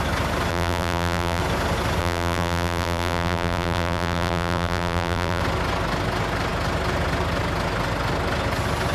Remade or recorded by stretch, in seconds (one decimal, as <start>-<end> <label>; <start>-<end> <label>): 0.0-0.5 recorded; 0.5-1.4 remade; 1.4-2.0 recorded; 2.0-5.4 remade; 5.4-8.9 recorded